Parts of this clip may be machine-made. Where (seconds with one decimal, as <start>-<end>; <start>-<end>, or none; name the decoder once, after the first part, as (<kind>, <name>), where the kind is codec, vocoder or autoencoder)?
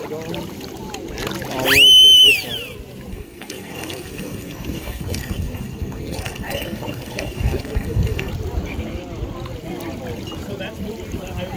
3.1-8.3 (codec, SNAC)